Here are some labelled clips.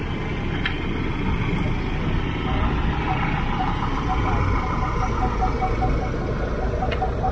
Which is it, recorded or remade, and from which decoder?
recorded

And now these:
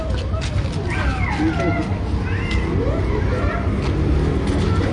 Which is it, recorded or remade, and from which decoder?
recorded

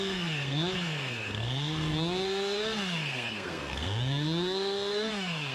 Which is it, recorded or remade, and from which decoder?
remade, codec, SNAC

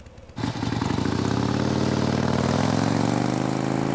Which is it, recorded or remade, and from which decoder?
recorded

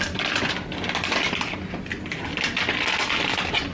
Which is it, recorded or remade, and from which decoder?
recorded